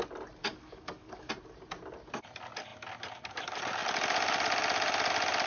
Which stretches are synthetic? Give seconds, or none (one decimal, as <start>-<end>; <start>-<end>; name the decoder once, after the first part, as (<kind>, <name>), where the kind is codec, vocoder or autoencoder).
0.4-1.3 (codec, DAC)